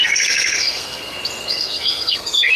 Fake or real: fake